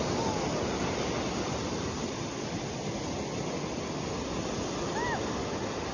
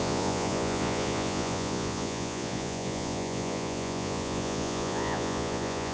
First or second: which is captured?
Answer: first